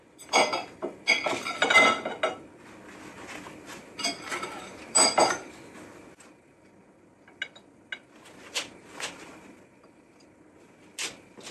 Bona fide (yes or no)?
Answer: yes